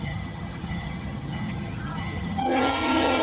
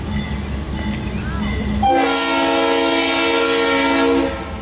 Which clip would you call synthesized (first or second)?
first